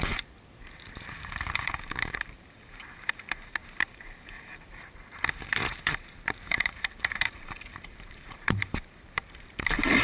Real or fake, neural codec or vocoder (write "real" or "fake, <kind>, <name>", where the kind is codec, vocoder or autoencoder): fake, vocoder, BigVGAN v2